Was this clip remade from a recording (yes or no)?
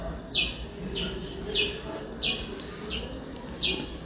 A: no